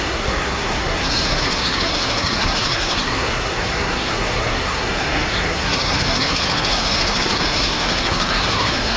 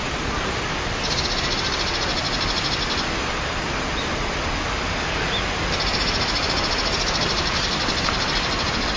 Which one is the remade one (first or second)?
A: first